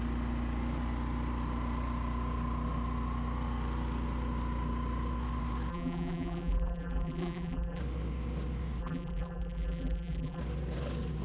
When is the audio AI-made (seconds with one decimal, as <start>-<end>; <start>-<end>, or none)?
5.7-7.8; 8.8-10.4